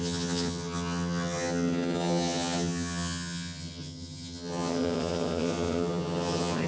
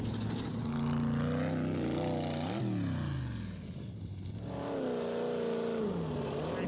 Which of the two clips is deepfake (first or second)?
first